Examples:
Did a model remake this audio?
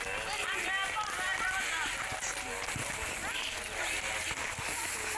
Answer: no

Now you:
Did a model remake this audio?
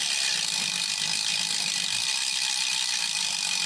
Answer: no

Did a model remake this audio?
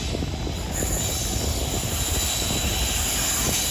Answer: no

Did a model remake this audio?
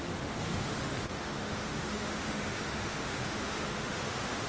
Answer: yes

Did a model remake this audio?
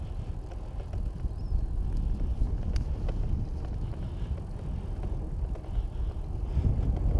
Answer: no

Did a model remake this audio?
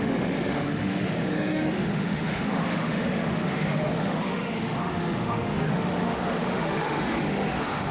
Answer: yes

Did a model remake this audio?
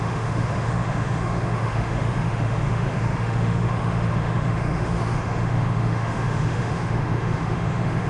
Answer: yes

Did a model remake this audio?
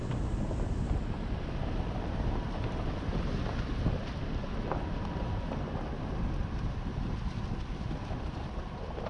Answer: no